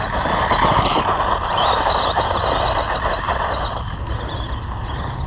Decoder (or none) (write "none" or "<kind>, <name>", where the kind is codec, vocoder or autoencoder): none